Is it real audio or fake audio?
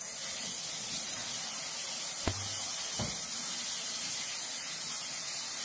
real